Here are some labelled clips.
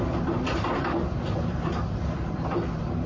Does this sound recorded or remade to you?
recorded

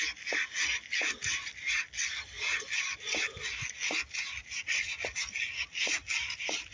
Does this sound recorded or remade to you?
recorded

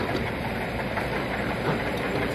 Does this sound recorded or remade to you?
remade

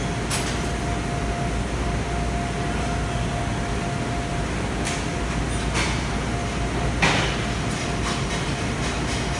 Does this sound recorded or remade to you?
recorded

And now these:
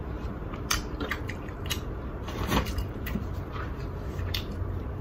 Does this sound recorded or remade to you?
remade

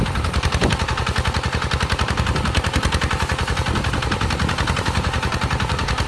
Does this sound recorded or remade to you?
remade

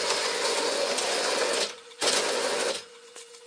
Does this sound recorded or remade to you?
remade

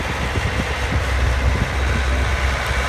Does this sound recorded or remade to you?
recorded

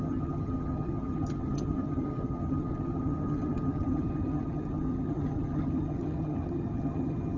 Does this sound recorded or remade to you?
remade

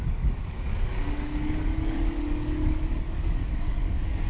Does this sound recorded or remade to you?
remade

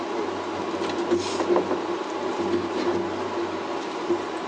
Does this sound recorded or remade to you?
recorded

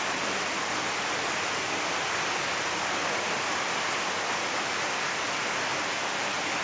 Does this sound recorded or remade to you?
recorded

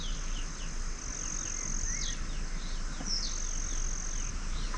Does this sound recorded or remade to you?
recorded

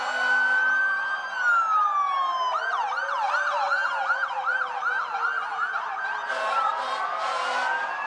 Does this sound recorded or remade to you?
recorded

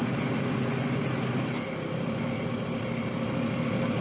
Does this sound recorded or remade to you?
recorded